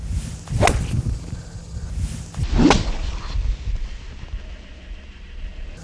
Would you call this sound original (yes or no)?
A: yes